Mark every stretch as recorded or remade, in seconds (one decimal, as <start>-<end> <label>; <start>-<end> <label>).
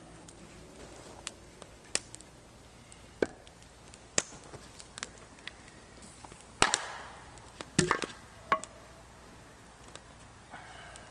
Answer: 0.0-11.1 recorded